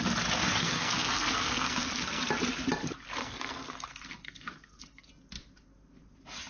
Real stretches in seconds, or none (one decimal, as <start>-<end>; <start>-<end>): 0.0-0.4; 2.3-3.2; 5.1-6.5